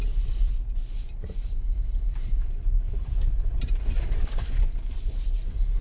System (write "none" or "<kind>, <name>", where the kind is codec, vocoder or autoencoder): vocoder, BigVGAN v2